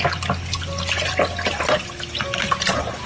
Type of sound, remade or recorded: recorded